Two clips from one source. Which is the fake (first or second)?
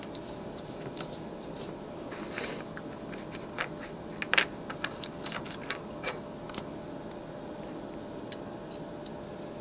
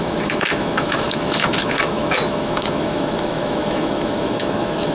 second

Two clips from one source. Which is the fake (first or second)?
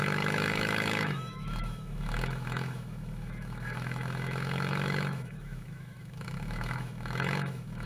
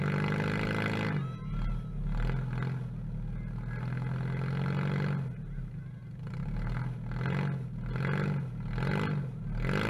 first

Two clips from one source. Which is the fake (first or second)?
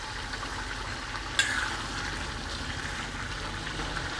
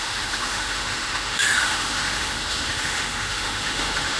second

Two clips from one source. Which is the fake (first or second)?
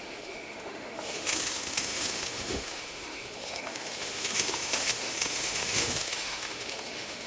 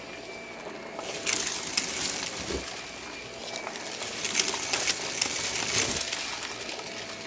first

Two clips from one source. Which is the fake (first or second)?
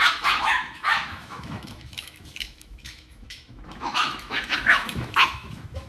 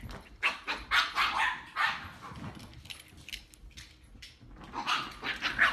first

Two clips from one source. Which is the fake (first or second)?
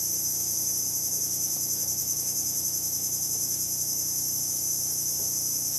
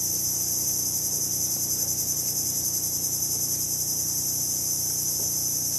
first